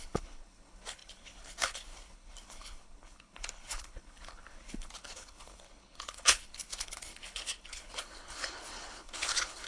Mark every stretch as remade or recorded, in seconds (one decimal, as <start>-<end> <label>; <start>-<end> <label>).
0.0-9.7 remade